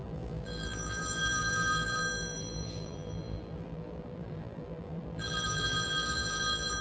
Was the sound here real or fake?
fake